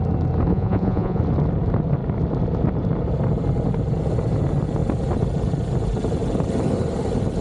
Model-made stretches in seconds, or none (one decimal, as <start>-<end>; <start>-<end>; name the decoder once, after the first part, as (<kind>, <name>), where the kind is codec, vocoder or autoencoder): 0.5-1.2 (vocoder, Vocos)